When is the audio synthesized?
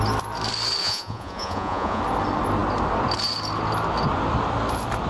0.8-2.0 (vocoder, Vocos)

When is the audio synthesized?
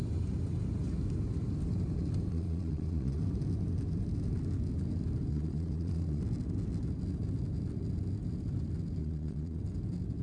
2.3-3.2 (vocoder, Vocos); 5.3-6.2; 9.0-9.6